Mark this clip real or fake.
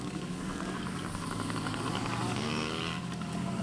fake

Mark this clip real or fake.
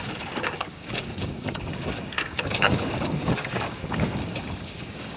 fake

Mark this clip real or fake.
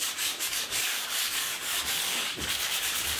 fake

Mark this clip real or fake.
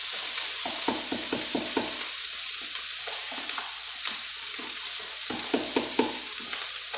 real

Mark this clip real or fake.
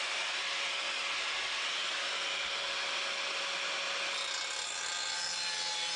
real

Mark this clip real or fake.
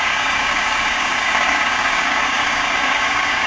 fake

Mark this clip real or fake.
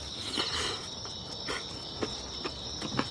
real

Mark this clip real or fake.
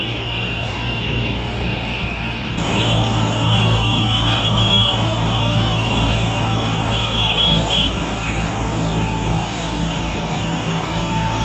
fake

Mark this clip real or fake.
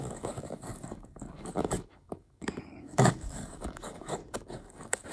fake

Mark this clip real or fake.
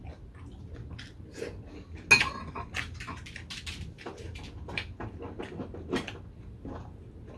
real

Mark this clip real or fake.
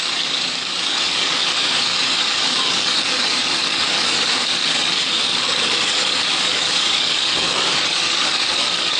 fake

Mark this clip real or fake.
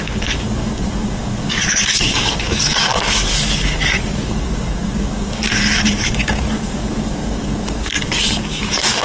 fake